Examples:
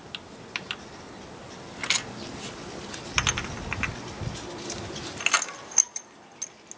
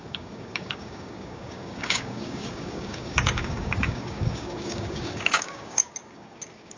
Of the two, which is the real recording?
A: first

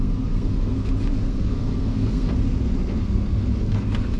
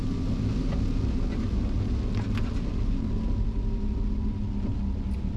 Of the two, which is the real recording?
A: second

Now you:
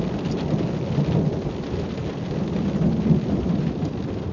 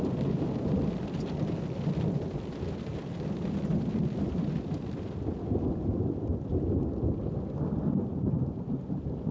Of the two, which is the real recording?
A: first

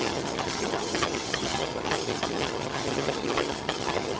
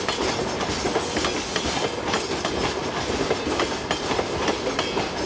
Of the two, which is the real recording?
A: second